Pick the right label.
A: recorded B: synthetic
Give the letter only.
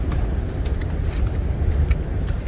A